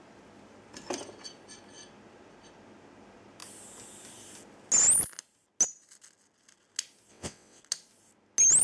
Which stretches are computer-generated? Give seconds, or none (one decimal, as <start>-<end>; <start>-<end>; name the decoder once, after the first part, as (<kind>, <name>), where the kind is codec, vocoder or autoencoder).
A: 7.1-7.6 (vocoder, WaveNeXt)